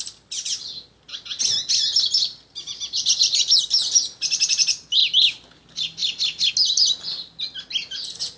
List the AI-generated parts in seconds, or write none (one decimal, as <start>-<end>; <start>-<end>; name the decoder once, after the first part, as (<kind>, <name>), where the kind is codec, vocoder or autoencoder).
2.2-3.6 (vocoder, BigVGAN v2)